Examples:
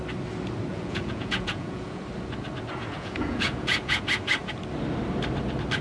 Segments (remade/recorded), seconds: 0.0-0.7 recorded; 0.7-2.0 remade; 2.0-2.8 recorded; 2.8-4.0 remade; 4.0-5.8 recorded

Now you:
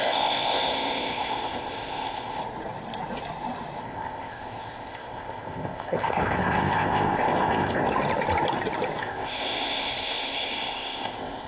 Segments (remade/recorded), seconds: 0.0-2.4 remade; 2.4-3.8 recorded; 3.8-7.9 remade; 7.9-9.0 recorded; 9.0-11.5 remade

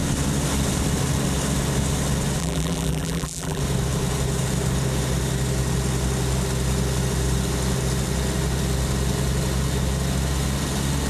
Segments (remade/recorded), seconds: 0.0-2.4 recorded; 2.4-3.6 remade; 3.6-11.1 recorded

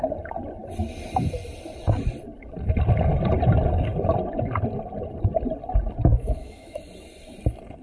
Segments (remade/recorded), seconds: 0.0-6.1 recorded; 6.1-6.9 remade; 6.9-7.8 recorded

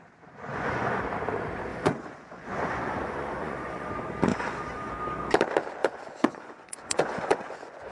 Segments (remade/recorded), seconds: 0.0-0.5 recorded; 0.5-1.0 remade; 1.0-1.7 recorded; 1.7-3.9 remade; 3.9-4.3 recorded; 4.3-4.9 remade; 4.9-5.8 recorded; 5.8-7.9 remade

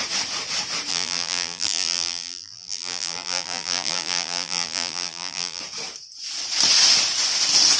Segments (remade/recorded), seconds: 0.0-0.9 recorded; 0.9-5.6 remade; 5.6-7.8 recorded